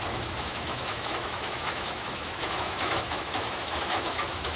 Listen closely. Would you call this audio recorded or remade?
remade